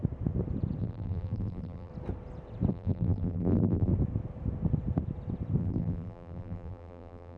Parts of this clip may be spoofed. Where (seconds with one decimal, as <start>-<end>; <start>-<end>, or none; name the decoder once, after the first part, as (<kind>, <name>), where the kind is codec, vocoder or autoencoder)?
0.8-1.9 (vocoder, BigVGAN v2); 2.7-3.9; 5.6-7.4